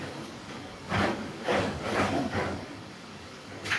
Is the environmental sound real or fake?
fake